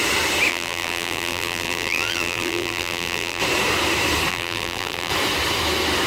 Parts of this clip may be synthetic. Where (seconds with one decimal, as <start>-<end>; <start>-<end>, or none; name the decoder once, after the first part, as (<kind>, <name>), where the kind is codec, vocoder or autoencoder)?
0.5-3.4 (vocoder, BigVGAN v2); 4.3-5.1